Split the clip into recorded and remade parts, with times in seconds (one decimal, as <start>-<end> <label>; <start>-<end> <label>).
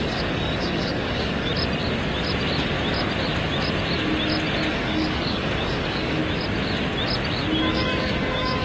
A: 0.0-1.5 remade; 1.5-4.7 recorded; 4.7-6.2 remade; 6.2-7.7 recorded; 7.7-8.6 remade